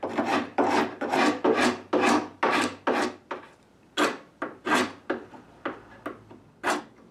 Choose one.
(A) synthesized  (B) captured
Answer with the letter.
B